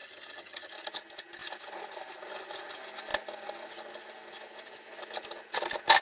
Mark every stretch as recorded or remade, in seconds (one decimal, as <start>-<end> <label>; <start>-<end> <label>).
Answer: 0.0-0.7 remade; 0.7-6.0 recorded